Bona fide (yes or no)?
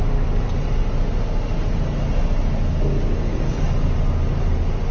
yes